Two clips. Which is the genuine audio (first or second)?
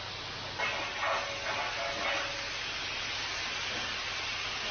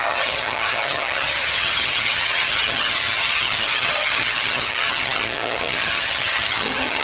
first